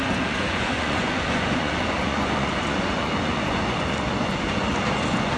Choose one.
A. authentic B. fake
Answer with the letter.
B